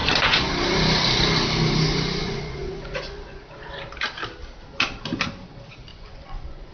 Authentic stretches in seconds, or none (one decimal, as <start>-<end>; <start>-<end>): 0.5-2.2; 3.4-5.9